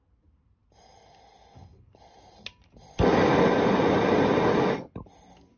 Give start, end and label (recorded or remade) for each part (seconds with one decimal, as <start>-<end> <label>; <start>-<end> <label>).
0.0-5.6 recorded